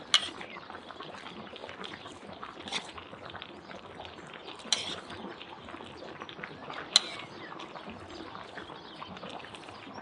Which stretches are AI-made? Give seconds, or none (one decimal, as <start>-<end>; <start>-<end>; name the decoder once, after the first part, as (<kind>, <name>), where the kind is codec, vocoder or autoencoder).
1.6-2.5 (vocoder, BigVGAN v2)